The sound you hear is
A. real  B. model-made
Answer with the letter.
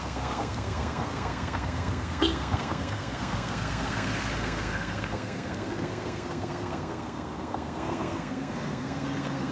B